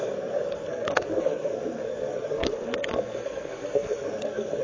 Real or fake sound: fake